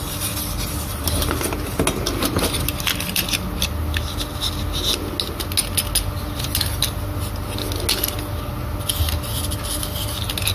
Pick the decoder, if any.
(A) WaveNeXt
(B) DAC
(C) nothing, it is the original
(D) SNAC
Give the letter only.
C